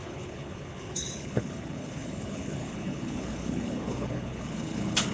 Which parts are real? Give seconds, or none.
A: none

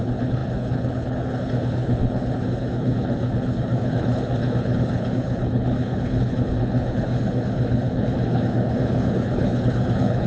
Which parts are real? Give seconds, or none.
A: none

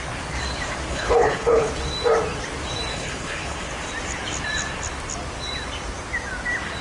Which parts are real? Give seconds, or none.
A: 0.0-0.9; 1.7-2.9; 3.7-6.8

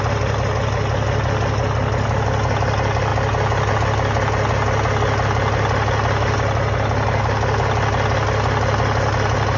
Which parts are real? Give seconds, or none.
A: 0.0-9.6

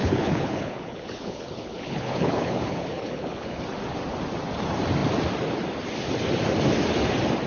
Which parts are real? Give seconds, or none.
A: 3.6-7.5

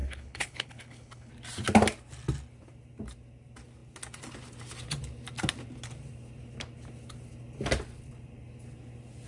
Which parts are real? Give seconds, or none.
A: 1.3-9.3

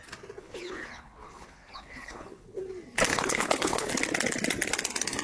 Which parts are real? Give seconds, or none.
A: 0.0-0.4; 2.6-3.1; 3.9-5.2

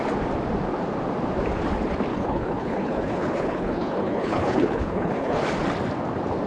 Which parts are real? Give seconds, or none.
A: 0.0-2.1; 5.4-6.5